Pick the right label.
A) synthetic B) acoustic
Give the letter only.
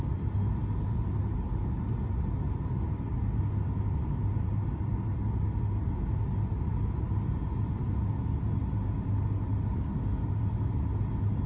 B